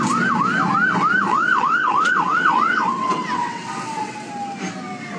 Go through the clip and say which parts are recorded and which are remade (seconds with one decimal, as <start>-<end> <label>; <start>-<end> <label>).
0.0-1.3 recorded; 1.3-4.3 remade; 4.3-5.2 recorded